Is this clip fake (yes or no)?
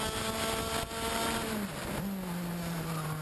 no